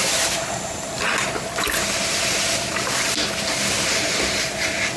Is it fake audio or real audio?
real